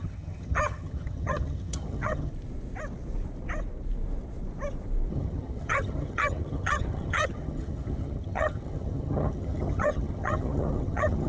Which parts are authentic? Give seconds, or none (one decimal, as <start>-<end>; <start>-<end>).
2.3-5.1